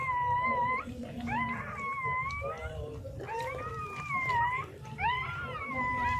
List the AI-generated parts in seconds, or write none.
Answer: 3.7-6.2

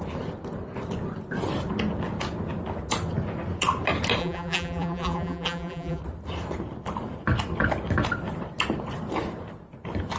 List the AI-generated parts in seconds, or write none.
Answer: 4.2-6.0

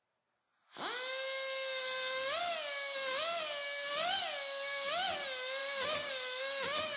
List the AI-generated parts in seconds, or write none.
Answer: 1.8-2.4; 5.6-6.4

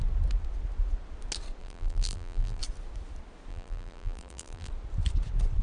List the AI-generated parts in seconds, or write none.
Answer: 1.6-2.6; 3.5-4.7